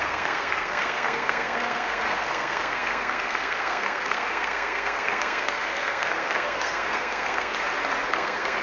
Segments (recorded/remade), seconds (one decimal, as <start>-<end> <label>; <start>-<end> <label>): 0.0-7.5 remade; 7.5-8.1 recorded; 8.1-8.6 remade